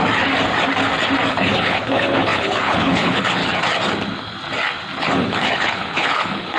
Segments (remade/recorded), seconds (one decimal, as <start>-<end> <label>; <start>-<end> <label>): 0.0-1.3 recorded; 1.3-3.4 remade; 3.4-5.0 recorded; 5.0-6.6 remade